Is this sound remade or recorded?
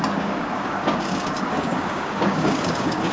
remade